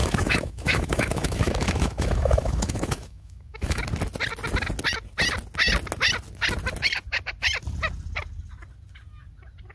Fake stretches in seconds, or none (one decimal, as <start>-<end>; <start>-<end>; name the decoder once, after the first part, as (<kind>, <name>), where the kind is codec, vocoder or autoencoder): 0.0-3.8 (autoencoder, DAC-VAE)